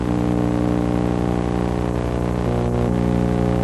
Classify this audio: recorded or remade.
recorded